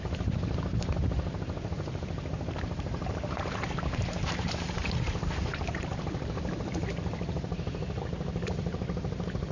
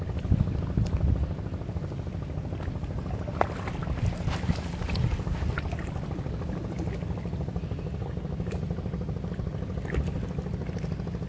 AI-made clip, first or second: first